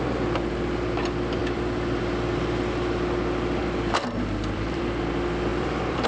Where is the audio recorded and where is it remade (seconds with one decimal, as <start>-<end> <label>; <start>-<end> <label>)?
0.0-1.4 recorded; 1.4-2.0 remade; 2.0-3.6 recorded; 3.6-4.8 remade; 4.8-5.5 recorded; 5.5-6.1 remade